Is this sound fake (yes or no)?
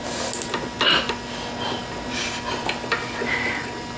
no